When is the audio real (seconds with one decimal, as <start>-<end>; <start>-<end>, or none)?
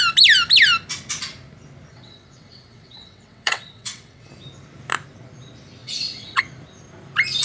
0.0-1.9; 4.3-5.8; 6.4-7.4